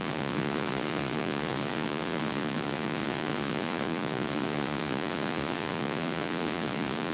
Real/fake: fake